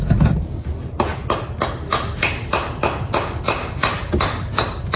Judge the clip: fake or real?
real